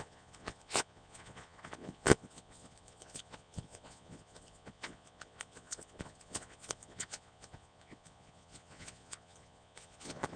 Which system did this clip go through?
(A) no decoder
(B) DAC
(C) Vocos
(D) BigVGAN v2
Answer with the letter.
C